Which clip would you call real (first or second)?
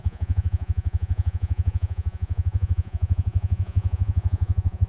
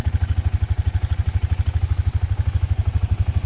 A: second